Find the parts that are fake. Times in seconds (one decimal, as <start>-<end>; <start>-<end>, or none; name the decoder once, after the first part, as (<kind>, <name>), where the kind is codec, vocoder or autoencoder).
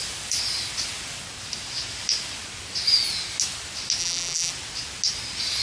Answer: 4.0-4.5 (vocoder, BigVGAN v2)